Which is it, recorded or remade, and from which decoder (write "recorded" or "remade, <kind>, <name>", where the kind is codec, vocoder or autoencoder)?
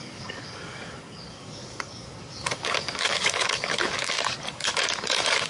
remade, codec, DAC